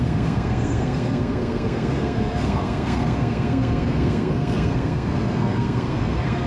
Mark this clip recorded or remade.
remade